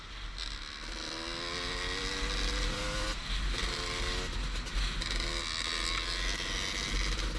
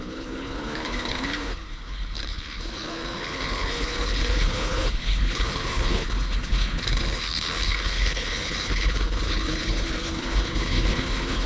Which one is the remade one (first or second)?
second